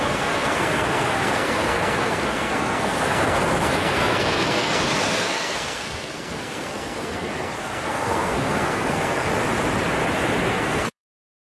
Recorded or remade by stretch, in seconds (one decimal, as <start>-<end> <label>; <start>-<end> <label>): 0.0-9.3 remade; 9.3-10.5 recorded; 10.5-11.5 remade